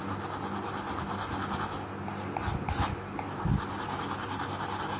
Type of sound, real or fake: real